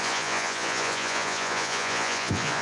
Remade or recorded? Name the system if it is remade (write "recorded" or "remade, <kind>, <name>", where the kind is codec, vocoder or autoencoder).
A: remade, vocoder, Vocos